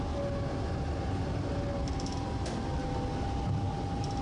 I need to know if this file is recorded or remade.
recorded